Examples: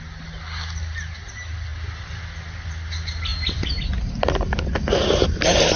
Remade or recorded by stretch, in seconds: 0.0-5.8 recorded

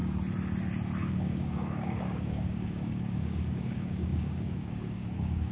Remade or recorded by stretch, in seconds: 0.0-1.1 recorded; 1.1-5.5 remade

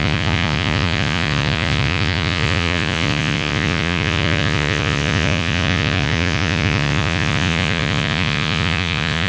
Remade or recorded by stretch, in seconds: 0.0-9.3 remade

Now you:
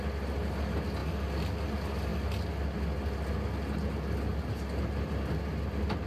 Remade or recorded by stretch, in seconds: 0.0-6.1 recorded